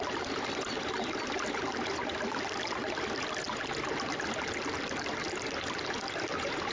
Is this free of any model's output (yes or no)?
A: yes